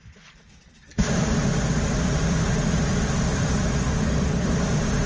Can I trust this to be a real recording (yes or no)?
yes